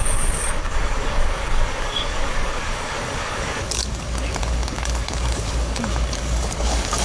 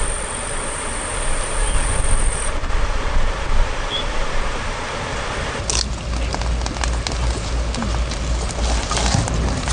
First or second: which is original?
second